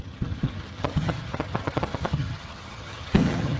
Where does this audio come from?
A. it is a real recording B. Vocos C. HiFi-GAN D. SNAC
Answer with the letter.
C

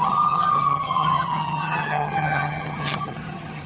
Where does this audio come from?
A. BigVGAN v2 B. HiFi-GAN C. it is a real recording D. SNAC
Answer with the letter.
B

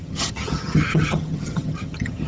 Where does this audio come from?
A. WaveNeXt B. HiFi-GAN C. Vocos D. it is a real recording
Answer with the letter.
B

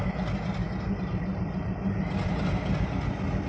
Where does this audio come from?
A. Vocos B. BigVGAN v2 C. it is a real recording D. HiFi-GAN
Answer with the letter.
C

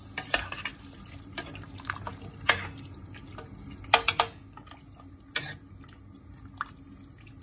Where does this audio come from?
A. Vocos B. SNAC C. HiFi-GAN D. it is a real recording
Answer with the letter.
D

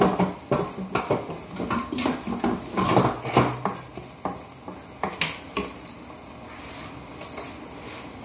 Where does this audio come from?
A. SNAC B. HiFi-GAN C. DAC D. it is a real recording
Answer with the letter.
D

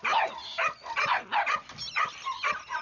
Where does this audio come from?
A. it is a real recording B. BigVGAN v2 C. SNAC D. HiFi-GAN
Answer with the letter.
A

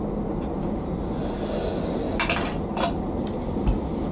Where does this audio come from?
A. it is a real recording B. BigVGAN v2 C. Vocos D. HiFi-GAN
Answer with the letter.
A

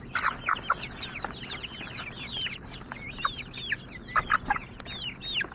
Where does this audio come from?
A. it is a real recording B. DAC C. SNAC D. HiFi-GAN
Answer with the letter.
A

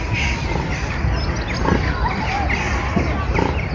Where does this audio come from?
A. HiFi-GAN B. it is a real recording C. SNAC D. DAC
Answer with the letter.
B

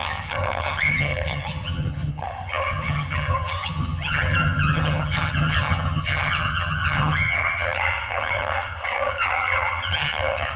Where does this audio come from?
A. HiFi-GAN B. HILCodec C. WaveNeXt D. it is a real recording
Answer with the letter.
A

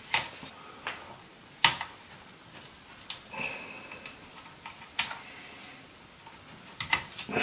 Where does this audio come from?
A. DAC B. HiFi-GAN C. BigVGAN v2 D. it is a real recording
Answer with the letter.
D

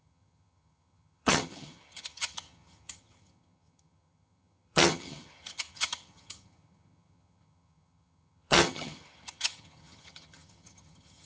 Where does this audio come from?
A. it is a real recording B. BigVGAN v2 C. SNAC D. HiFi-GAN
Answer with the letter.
D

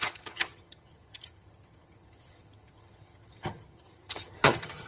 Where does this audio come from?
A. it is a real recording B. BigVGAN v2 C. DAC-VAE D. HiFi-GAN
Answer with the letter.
D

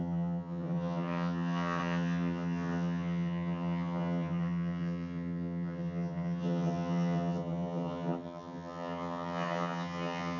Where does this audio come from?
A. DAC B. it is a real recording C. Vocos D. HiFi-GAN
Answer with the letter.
D